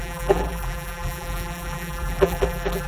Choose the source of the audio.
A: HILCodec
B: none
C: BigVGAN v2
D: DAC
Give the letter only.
C